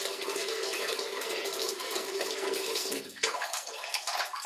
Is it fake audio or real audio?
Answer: fake